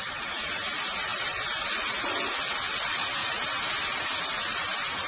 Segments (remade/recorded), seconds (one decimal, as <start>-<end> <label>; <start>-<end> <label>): 0.0-1.1 recorded; 1.1-1.7 remade; 1.7-5.1 recorded